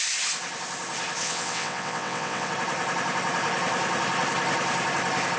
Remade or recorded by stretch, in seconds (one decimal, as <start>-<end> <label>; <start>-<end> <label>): 0.0-1.2 recorded; 1.2-2.5 remade; 2.5-5.4 recorded